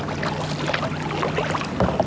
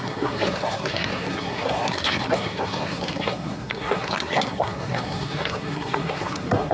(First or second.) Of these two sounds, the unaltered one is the first